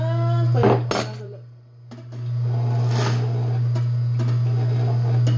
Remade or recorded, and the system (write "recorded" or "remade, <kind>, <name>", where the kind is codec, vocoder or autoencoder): recorded